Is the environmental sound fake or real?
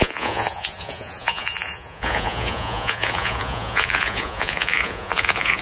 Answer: fake